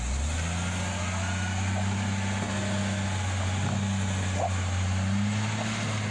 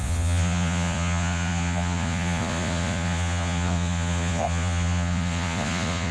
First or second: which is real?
first